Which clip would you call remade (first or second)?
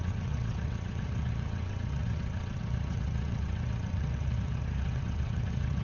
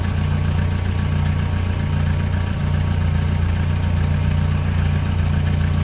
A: first